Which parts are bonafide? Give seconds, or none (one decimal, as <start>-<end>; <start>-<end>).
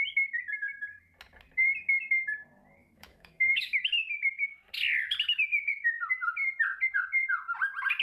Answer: 0.0-2.8; 3.9-8.0